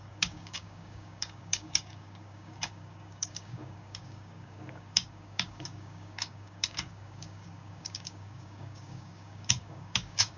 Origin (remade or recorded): remade